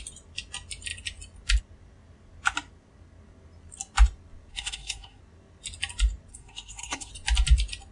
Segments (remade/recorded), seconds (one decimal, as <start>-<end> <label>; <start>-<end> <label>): 0.0-4.5 recorded; 4.5-5.2 remade; 5.2-6.3 recorded; 6.3-7.1 remade; 7.1-7.9 recorded